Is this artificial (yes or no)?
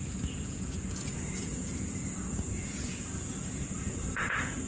yes